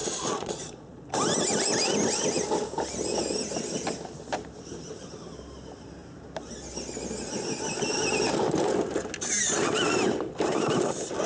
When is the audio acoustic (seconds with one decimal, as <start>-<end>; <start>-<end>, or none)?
1.1-11.3